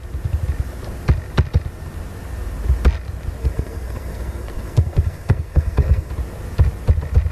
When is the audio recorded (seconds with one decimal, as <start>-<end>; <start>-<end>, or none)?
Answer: 0.0-3.4; 6.1-7.3